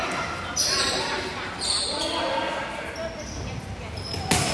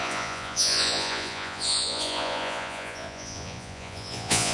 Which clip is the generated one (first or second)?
second